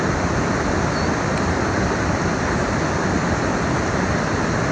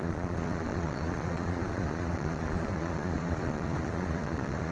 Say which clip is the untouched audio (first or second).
first